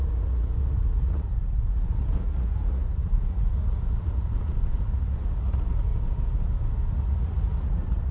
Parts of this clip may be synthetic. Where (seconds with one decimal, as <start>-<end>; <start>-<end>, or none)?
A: 0.0-5.9; 6.8-8.1